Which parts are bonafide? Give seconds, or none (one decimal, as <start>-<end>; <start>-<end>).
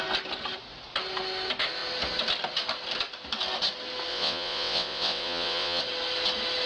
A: 0.0-4.1; 5.8-6.7